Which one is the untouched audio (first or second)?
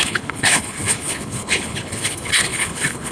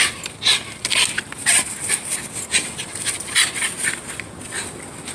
second